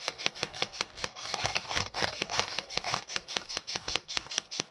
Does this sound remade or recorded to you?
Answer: remade